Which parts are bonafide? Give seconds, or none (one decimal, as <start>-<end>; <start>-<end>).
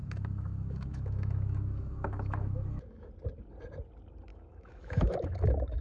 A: 3.1-4.3